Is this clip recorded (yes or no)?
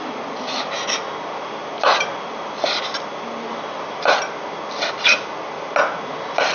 yes